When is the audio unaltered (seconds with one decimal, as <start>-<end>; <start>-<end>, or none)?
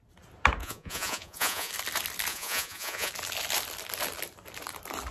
0.0-0.6; 1.7-2.3; 3.1-5.1